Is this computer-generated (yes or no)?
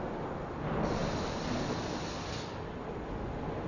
no